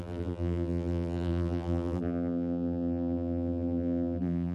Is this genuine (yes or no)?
no